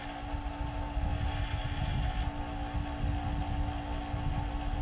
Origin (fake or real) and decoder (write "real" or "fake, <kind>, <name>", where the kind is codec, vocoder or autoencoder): real